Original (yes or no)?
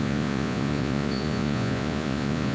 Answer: no